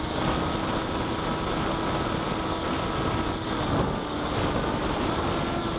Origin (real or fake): real